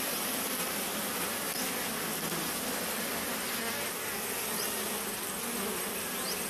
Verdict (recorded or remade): recorded